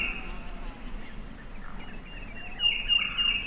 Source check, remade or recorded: recorded